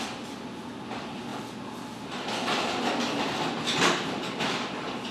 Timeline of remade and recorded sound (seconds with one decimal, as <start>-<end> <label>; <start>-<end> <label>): 0.0-5.1 recorded